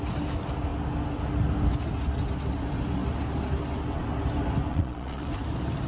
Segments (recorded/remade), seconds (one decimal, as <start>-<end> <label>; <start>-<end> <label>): 0.0-4.7 recorded; 4.7-5.3 remade; 5.3-5.9 recorded

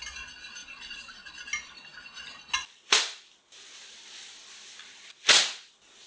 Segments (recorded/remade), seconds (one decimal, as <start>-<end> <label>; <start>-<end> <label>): 0.0-0.6 recorded; 0.6-1.3 remade; 1.3-6.1 recorded